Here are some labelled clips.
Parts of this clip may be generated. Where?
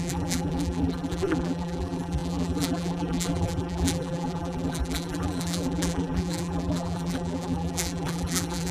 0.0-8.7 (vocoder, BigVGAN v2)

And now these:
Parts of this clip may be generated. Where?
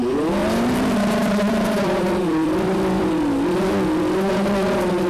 0.4-3.1 (vocoder, BigVGAN v2)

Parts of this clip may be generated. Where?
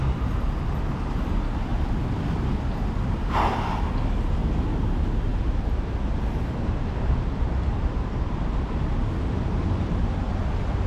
5.3-8.4 (vocoder, BigVGAN v2)